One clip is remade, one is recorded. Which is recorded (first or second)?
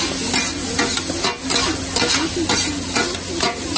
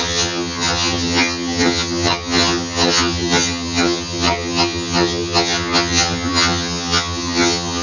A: first